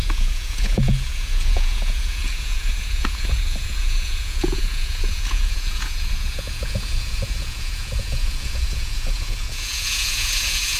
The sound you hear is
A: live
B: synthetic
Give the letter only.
B